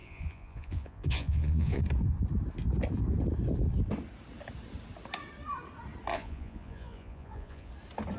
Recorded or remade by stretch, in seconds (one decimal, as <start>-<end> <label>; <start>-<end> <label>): 0.0-1.8 remade; 1.8-6.1 recorded; 6.1-7.7 remade; 7.7-8.2 recorded